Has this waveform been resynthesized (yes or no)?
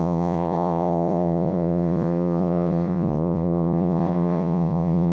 yes